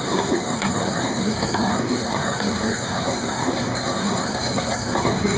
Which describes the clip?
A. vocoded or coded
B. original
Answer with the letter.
A